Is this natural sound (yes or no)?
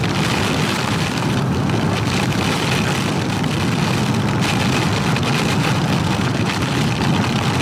yes